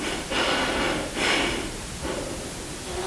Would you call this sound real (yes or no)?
yes